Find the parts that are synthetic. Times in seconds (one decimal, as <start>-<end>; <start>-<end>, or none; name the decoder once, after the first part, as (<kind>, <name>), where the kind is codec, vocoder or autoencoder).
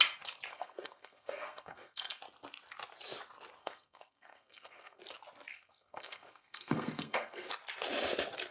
0.5-2.2 (codec, SNAC); 3.6-5.0; 5.5-7.5